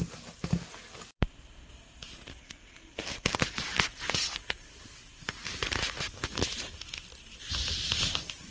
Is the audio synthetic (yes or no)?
no